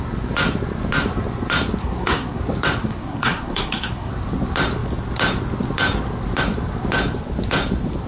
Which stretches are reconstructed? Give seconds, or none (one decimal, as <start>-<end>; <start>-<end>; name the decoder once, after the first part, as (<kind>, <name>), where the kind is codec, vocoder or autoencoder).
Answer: 1.8-2.4 (codec, SNAC); 2.8-4.1